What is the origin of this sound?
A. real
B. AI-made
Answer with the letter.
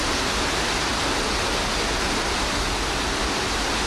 A